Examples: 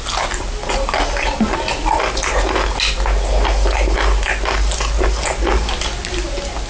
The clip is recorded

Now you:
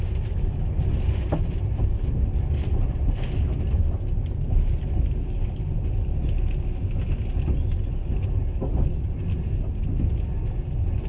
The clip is recorded